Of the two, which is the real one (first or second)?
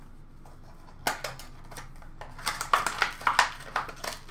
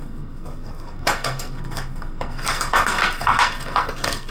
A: first